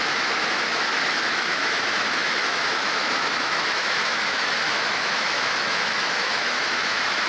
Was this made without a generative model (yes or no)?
no